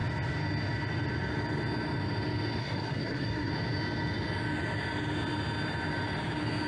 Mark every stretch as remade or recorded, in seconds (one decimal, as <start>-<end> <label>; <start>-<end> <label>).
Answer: 0.0-2.6 recorded; 2.6-3.5 remade; 3.5-6.7 recorded